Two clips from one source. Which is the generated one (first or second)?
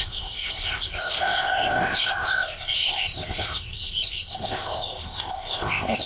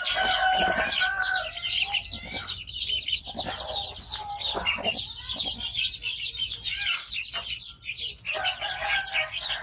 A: first